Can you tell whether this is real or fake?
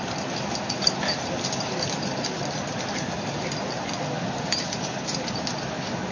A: real